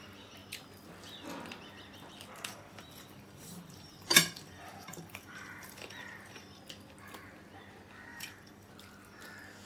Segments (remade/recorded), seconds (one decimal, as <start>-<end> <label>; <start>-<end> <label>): 0.0-2.5 recorded; 2.5-6.6 remade; 6.6-8.1 recorded; 8.1-8.7 remade; 8.7-9.7 recorded